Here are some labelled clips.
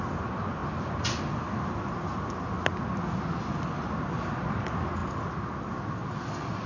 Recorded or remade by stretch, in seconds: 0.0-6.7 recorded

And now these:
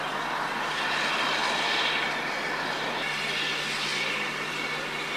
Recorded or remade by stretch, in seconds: 0.0-5.2 recorded

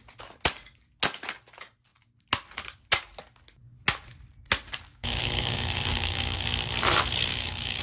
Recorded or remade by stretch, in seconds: 0.0-4.9 recorded; 4.9-6.4 remade; 6.4-7.3 recorded; 7.3-7.8 remade

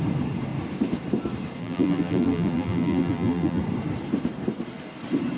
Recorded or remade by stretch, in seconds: 0.0-1.6 recorded; 1.6-3.6 remade; 3.6-5.4 recorded

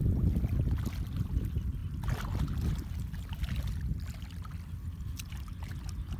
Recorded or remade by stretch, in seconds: 0.0-6.2 recorded

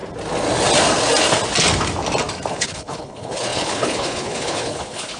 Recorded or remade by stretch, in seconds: 0.0-2.5 recorded; 2.5-5.2 remade